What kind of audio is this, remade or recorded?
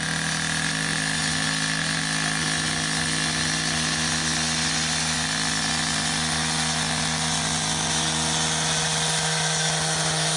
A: recorded